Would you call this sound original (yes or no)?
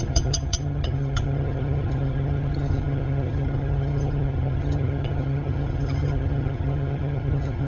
no